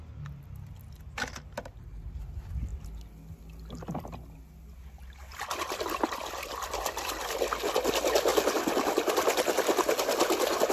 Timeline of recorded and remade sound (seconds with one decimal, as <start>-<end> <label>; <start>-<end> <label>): 0.0-10.7 recorded